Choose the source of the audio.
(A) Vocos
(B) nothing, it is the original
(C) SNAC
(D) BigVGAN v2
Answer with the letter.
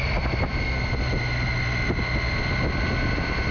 B